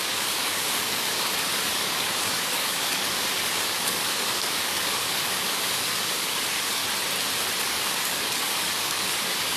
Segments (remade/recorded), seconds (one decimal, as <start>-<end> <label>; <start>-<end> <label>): 0.0-6.8 remade; 6.8-7.6 recorded; 7.6-9.6 remade